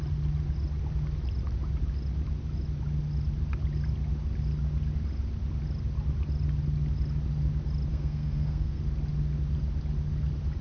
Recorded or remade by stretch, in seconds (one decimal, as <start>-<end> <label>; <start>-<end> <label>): 0.0-7.9 recorded; 7.9-8.8 remade; 8.8-10.6 recorded